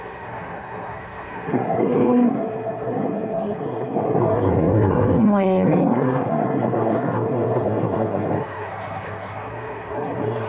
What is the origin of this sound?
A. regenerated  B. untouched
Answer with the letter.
A